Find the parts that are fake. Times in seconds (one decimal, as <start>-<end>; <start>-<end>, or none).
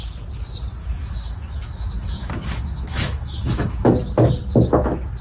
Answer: 0.8-3.9